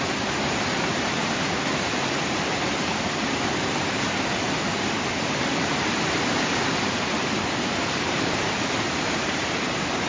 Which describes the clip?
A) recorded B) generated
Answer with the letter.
B